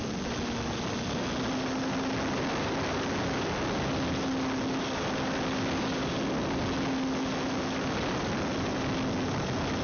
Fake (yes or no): no